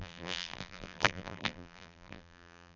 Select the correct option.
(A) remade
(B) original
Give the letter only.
A